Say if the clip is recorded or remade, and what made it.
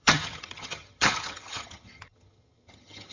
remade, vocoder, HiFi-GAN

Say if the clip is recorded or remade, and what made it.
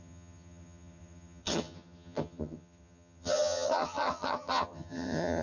remade, vocoder, HiFi-GAN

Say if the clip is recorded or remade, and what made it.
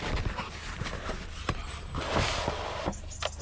recorded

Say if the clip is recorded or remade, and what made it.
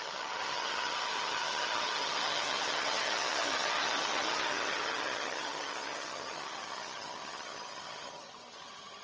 remade, vocoder, HiFi-GAN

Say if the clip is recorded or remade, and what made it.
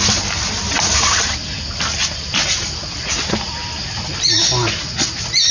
recorded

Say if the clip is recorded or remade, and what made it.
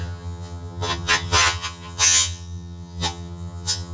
remade, vocoder, HiFi-GAN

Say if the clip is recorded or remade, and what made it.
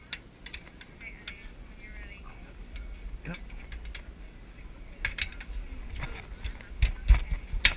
recorded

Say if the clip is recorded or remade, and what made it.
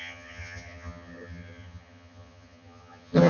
remade, vocoder, HiFi-GAN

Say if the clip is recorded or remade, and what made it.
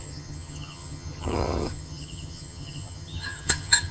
remade, vocoder, HiFi-GAN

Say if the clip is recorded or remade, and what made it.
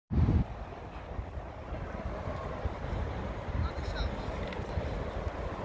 recorded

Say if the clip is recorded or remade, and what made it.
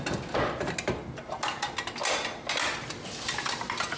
recorded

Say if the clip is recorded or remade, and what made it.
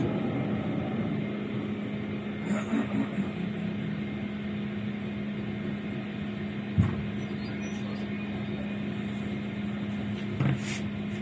recorded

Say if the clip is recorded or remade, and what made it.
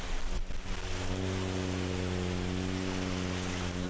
recorded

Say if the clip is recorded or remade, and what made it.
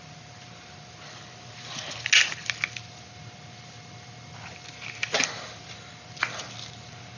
recorded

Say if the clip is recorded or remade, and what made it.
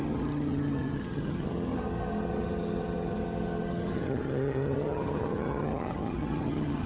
remade, vocoder, HiFi-GAN